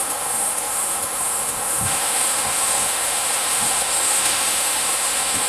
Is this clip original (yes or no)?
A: no